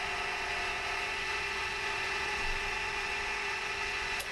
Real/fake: fake